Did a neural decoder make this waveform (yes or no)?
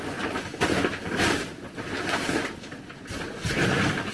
no